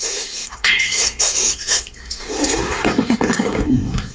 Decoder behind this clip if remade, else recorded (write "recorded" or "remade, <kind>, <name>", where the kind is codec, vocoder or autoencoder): remade, codec, SNAC